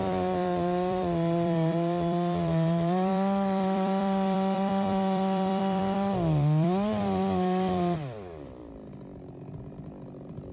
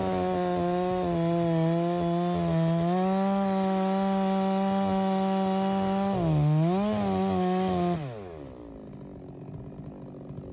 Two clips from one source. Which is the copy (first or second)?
first